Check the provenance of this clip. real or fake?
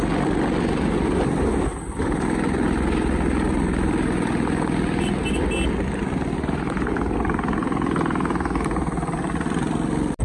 real